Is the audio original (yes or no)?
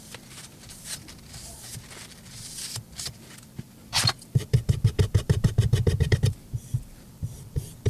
no